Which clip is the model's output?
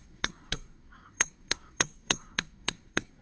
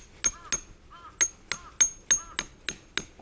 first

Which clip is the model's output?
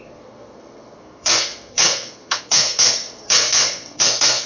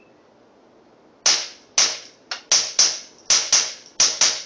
first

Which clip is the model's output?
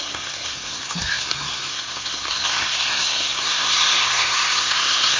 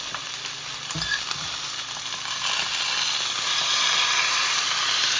first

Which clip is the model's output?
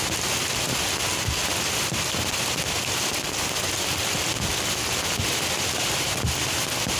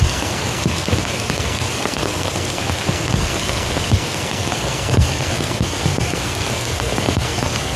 second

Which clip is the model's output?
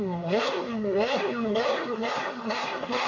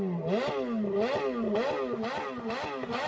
first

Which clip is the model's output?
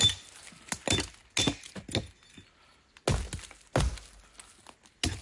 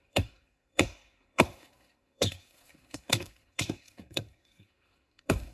second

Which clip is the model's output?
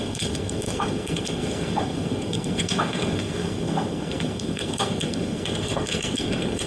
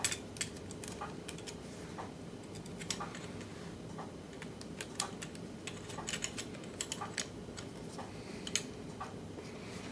first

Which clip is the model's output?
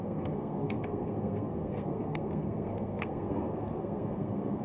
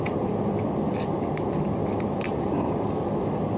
first